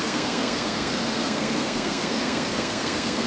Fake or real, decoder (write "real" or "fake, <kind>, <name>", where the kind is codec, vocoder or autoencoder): fake, codec, SNAC